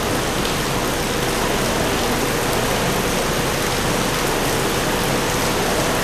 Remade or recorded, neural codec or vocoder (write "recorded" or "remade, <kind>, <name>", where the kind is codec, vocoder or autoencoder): recorded